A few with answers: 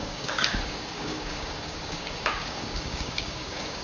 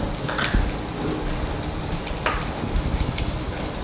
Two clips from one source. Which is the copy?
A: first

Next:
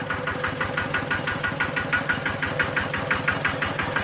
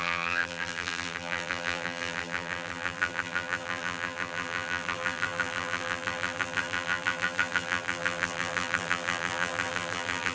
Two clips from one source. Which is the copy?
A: second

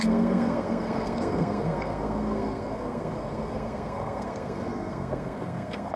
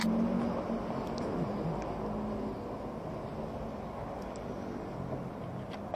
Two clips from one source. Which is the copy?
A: first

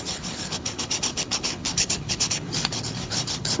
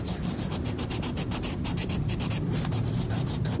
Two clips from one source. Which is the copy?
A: first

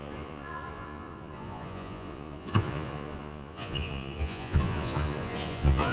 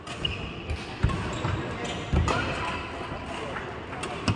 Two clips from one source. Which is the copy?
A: first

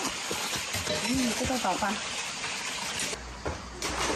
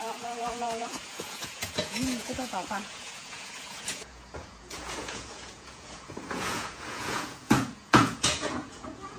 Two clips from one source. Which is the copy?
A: second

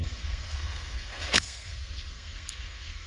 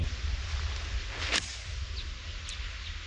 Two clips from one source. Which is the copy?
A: first